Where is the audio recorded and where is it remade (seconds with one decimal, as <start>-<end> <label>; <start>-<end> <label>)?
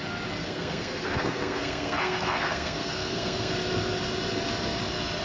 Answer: 0.0-0.4 recorded; 0.4-3.5 remade; 3.5-5.2 recorded